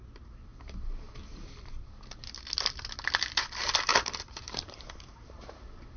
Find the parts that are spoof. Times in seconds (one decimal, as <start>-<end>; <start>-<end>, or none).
0.5-1.9; 3.9-5.5

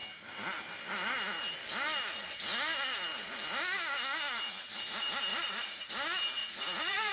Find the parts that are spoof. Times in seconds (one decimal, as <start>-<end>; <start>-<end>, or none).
5.3-5.9; 6.4-7.1